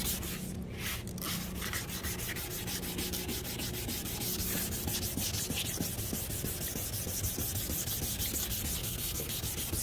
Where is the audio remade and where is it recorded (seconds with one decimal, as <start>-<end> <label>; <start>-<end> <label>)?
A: 0.0-8.8 recorded; 8.8-9.3 remade; 9.3-9.8 recorded